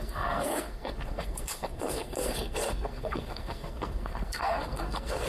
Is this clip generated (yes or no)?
yes